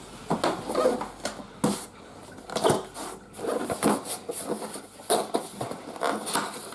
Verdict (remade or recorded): recorded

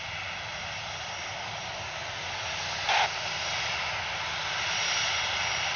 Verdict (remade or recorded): recorded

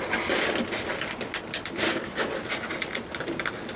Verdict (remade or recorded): recorded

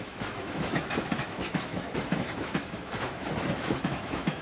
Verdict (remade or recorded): remade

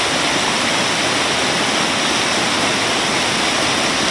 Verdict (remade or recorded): recorded